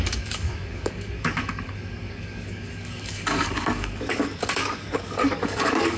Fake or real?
fake